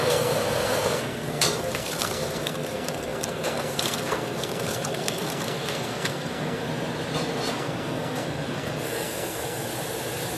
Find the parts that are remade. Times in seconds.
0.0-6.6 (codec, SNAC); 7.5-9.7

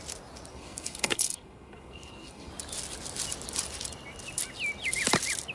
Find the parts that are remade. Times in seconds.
0.5-2.5 (codec, SNAC)

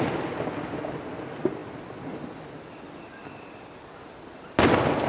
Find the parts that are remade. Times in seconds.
none

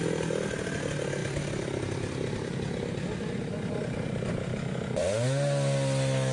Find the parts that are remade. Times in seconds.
none

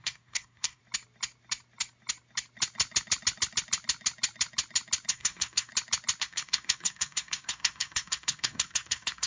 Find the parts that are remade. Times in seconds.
0.0-0.8 (codec, SNAC); 5.1-5.7; 6.2-9.3

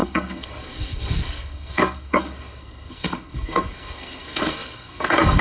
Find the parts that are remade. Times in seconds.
0.0-5.4 (codec, SNAC)

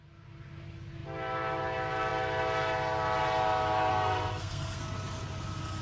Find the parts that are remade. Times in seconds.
3.9-4.8 (codec, SNAC)

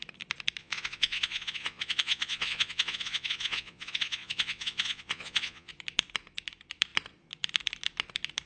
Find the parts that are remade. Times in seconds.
0.6-5.7 (vocoder, Vocos)